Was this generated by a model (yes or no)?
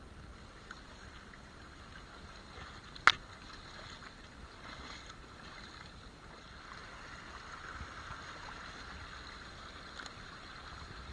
no